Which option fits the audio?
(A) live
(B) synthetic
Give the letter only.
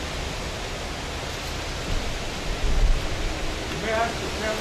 A